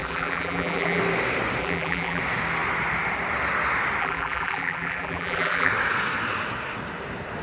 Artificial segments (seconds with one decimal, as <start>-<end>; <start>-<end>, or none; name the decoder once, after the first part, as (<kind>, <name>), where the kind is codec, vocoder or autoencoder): 0.0-1.0 (vocoder, BigVGAN v2); 1.6-2.2; 4.0-5.7